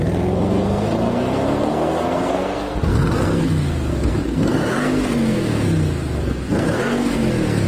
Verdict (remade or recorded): remade